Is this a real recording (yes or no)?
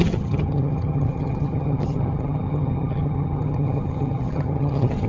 no